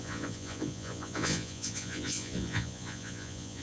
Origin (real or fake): fake